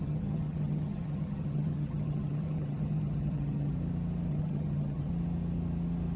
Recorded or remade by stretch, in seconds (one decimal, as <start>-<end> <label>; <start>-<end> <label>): 0.0-3.7 remade; 3.7-4.3 recorded; 4.3-5.1 remade; 5.1-6.2 recorded